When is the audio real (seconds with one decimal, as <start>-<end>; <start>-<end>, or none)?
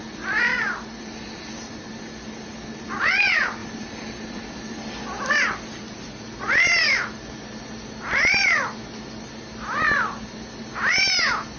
0.0-11.6